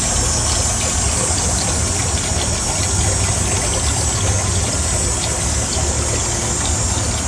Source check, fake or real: real